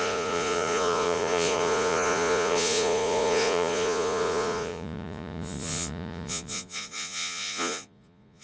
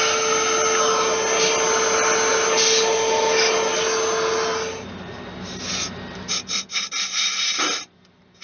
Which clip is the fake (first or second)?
first